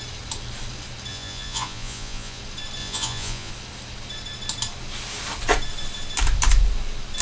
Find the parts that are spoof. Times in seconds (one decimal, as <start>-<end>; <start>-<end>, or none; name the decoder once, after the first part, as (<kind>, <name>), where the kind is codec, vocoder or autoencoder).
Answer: 1.1-2.4 (vocoder, Vocos); 2.8-3.5